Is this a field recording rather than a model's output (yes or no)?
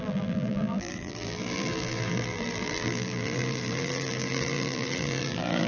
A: no